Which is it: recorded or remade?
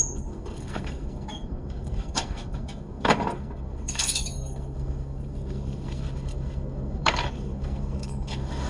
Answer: remade